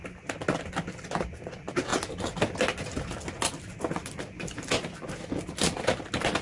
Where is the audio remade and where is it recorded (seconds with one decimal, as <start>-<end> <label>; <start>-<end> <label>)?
0.0-6.4 recorded